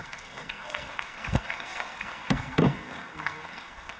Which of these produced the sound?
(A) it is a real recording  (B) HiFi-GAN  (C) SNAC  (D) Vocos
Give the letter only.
C